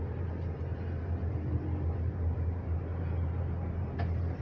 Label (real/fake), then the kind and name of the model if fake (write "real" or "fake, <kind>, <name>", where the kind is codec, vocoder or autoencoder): real